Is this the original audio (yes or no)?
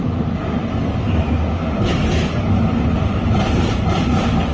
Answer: yes